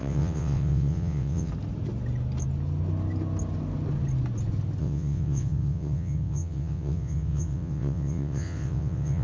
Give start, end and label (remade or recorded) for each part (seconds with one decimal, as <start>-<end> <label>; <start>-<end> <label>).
0.0-1.5 remade; 1.5-4.8 recorded; 4.8-9.2 remade